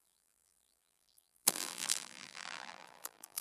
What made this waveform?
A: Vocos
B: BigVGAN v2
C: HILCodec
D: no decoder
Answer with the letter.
B